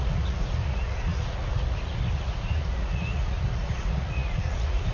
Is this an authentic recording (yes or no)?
no